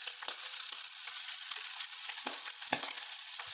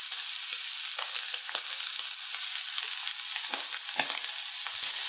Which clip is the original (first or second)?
second